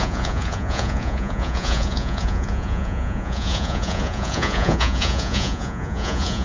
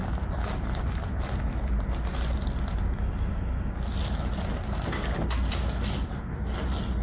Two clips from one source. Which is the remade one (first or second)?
first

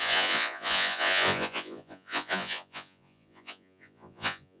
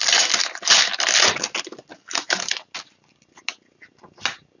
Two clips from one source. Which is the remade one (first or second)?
first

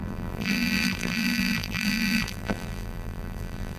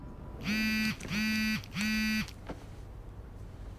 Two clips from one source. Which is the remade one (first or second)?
first